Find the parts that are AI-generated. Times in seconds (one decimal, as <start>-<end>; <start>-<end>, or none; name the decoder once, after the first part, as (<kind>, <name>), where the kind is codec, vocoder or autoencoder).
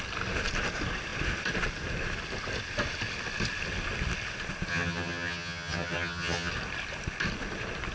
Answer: 4.7-6.5 (vocoder, HiFi-GAN)